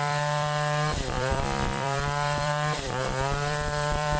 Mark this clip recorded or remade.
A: remade